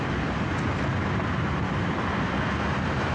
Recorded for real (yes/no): yes